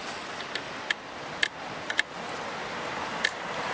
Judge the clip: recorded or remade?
recorded